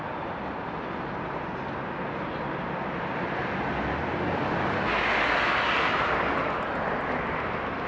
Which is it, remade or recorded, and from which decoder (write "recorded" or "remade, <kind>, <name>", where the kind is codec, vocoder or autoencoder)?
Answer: recorded